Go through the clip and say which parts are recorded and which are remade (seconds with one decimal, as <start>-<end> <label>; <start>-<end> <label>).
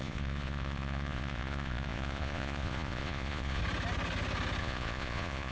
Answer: 0.0-3.6 remade; 3.6-4.6 recorded; 4.6-5.5 remade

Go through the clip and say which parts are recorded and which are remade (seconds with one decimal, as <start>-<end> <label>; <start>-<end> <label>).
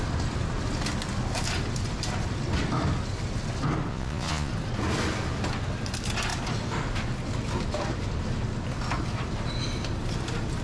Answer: 0.0-3.9 recorded; 3.9-4.5 remade; 4.5-10.6 recorded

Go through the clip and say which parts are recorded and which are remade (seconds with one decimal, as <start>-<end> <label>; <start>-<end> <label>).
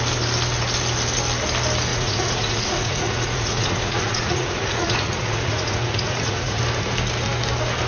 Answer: 0.0-1.9 recorded; 1.9-6.6 remade; 6.6-7.9 recorded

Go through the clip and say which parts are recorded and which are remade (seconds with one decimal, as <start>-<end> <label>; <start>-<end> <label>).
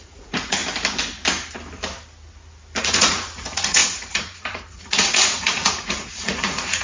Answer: 0.0-0.6 remade; 0.6-2.8 recorded; 2.8-6.8 remade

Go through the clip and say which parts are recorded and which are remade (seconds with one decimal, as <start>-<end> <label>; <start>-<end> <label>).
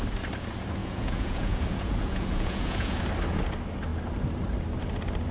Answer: 0.0-0.8 recorded; 0.8-3.0 remade; 3.0-5.3 recorded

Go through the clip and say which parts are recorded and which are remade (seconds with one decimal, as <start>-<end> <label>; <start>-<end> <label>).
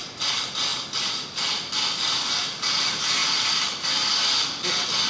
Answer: 0.0-5.1 recorded